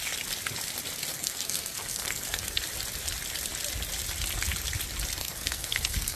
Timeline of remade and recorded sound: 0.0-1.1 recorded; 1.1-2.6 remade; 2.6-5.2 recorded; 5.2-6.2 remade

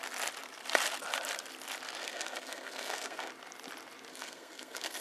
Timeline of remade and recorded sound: 0.0-2.0 recorded; 2.0-3.3 remade; 3.3-4.1 recorded; 4.1-5.0 remade

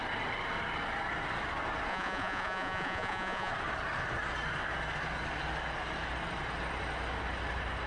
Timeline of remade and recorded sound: 0.0-1.9 recorded; 1.9-3.5 remade; 3.5-7.9 recorded

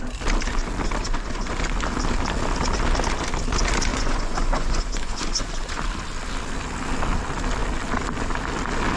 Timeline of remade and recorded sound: 0.0-1.0 recorded; 1.0-1.5 remade; 1.5-3.9 recorded; 3.9-5.8 remade; 5.8-9.0 recorded